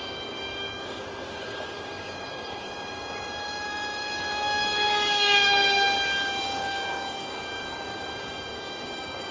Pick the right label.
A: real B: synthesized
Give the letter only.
B